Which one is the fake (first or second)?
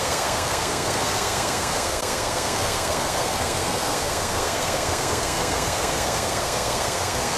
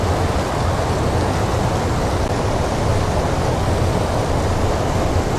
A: first